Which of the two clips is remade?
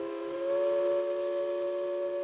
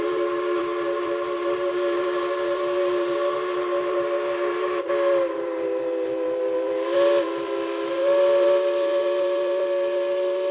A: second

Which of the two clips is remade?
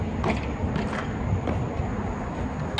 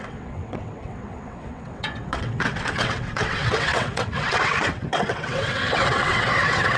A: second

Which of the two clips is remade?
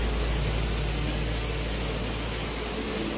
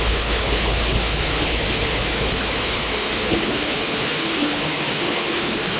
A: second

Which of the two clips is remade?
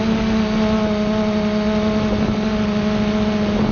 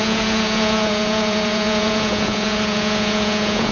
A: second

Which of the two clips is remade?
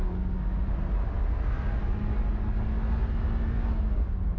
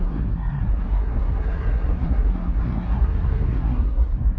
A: second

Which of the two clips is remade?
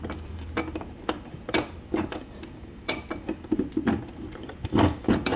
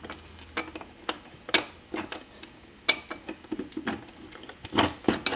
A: first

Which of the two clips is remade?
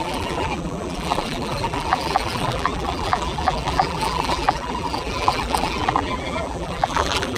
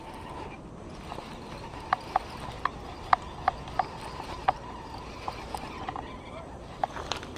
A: first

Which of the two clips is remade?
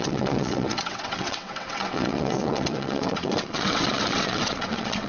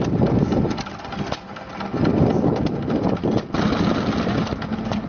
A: first